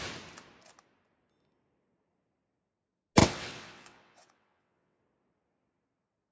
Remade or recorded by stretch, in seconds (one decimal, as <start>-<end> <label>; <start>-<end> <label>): 0.0-3.2 recorded; 3.2-5.0 remade; 5.0-6.3 recorded